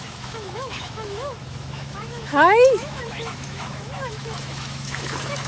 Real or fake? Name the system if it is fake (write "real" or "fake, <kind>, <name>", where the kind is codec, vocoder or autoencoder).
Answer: fake, autoencoder, DAC-VAE